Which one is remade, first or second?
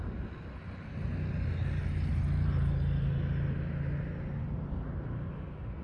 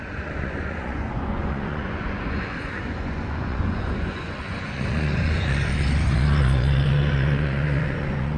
second